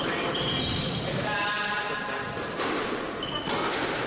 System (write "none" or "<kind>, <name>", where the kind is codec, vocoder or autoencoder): none